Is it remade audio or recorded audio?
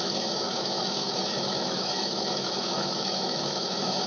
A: remade